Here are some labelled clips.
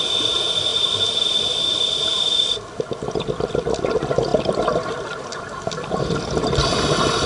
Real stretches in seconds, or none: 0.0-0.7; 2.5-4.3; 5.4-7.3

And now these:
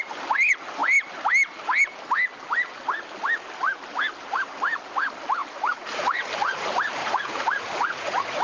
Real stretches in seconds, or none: 0.0-5.4; 6.3-7.0

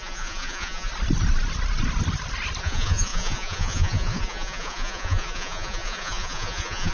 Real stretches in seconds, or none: 0.9-2.6